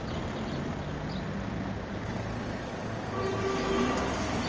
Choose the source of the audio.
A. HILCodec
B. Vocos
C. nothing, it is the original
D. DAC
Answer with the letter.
C